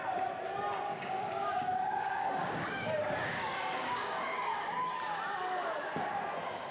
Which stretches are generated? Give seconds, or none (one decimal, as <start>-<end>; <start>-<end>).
0.9-4.9